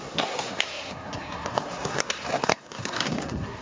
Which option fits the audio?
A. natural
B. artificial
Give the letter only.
B